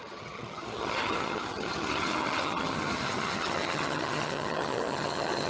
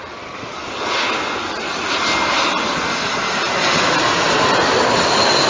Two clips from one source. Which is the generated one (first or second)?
first